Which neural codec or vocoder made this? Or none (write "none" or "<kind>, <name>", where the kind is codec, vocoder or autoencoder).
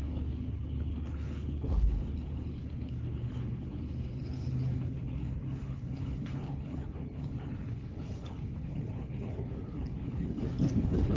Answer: codec, HILCodec